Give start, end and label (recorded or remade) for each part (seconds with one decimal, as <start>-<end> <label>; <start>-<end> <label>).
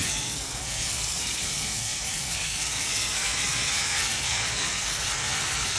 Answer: 0.0-5.8 remade